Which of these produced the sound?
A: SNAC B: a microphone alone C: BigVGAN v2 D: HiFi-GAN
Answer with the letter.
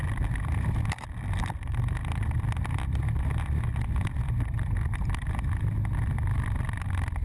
B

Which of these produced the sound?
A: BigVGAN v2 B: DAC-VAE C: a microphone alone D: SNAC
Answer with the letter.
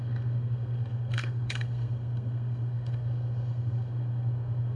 D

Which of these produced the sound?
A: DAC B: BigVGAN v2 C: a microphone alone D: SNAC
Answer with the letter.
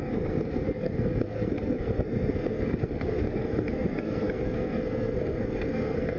D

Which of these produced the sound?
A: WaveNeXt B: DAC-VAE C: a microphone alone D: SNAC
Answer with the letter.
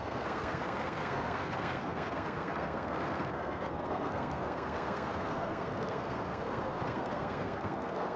D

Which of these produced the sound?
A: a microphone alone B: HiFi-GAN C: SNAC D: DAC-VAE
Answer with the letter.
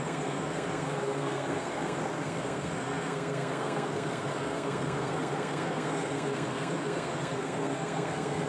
C